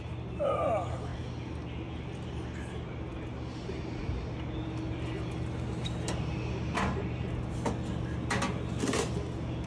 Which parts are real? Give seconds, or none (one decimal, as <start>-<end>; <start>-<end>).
0.0-9.7